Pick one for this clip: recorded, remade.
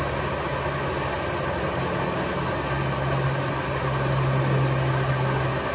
recorded